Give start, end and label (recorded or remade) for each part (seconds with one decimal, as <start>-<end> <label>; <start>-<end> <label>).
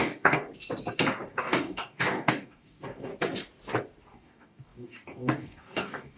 0.0-0.5 remade; 0.5-1.3 recorded; 1.3-3.1 remade; 3.1-4.1 recorded; 4.1-6.2 remade